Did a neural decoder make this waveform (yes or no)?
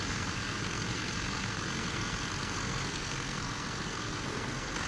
yes